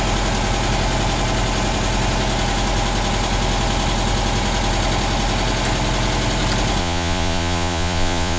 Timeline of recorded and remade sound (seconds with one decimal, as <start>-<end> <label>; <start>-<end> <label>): 0.0-6.8 recorded; 6.8-8.4 remade